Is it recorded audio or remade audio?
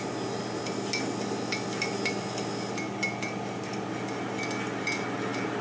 recorded